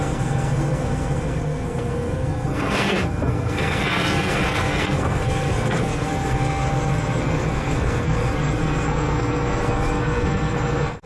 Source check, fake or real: fake